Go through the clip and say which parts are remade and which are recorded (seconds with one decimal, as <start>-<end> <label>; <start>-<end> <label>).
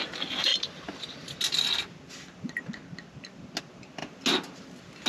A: 0.0-5.1 recorded